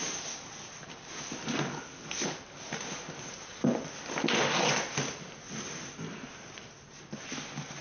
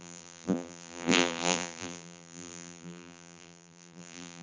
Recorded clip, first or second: first